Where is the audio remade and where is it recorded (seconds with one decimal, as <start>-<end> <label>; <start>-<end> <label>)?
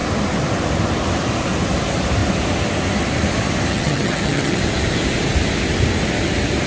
0.0-3.7 recorded; 3.7-4.6 remade; 4.6-6.7 recorded